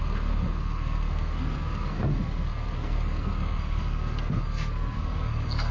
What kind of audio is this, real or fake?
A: fake